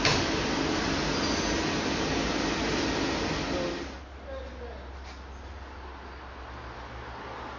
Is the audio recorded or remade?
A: recorded